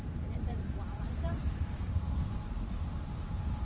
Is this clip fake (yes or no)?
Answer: yes